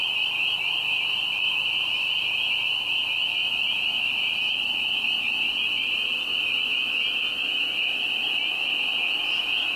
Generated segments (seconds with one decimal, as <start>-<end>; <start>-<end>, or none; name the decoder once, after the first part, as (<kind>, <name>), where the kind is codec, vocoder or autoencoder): none